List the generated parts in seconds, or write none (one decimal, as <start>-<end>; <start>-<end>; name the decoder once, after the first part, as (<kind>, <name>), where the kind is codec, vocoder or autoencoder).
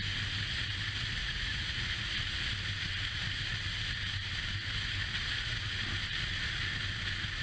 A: 1.2-2.1 (vocoder, Vocos)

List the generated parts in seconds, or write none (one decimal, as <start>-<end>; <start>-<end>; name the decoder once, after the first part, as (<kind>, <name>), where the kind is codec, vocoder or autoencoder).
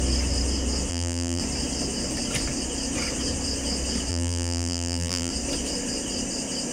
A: 0.9-1.4 (vocoder, BigVGAN v2); 4.1-5.3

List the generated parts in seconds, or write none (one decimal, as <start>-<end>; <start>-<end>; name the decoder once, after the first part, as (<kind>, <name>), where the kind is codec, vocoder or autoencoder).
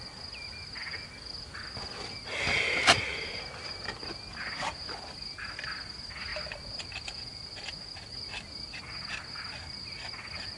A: none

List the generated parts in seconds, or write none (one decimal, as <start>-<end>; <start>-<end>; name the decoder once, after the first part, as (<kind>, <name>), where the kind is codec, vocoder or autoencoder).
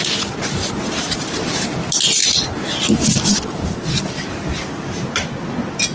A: none